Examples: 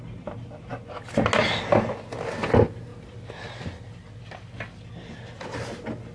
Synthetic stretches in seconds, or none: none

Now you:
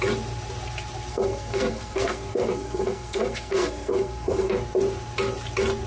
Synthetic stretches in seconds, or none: 1.1-4.6 (codec, SNAC)

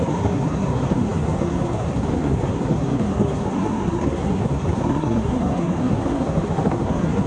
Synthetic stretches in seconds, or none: 0.0-7.3 (codec, SNAC)

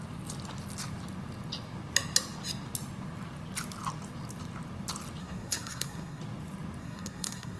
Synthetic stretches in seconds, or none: 5.2-6.2 (codec, SNAC); 6.8-7.6

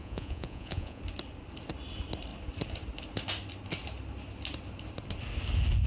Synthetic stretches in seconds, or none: 0.0-1.0 (vocoder, Vocos)